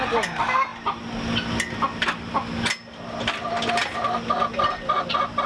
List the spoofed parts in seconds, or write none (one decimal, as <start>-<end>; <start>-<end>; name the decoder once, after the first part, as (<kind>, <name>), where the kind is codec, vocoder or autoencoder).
none